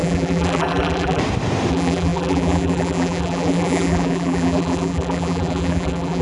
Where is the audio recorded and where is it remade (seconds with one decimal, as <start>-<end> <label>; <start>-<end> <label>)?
0.0-1.2 remade; 1.2-1.7 recorded; 1.7-6.2 remade